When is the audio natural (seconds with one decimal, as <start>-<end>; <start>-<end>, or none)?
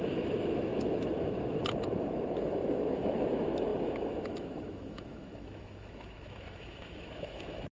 none